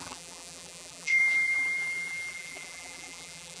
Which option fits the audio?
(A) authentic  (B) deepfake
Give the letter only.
B